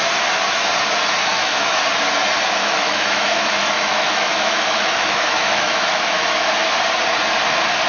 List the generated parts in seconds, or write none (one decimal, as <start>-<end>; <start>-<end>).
1.3-1.8; 2.6-6.5